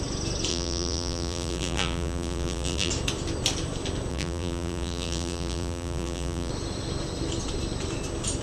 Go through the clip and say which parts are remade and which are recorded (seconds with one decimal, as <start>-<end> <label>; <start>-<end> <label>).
0.0-0.5 recorded; 0.5-2.9 remade; 2.9-4.1 recorded; 4.1-6.5 remade; 6.5-8.4 recorded